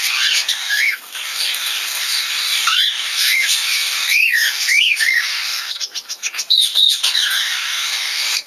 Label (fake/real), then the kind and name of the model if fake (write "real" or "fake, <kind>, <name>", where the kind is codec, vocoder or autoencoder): fake, codec, DAC